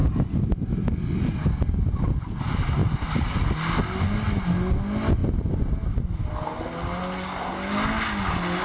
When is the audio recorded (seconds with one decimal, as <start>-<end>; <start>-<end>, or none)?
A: 0.0-8.6